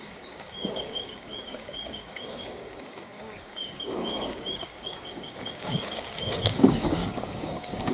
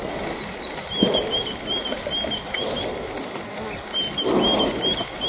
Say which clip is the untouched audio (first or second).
second